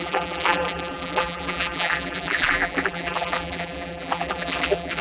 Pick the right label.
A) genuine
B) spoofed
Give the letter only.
B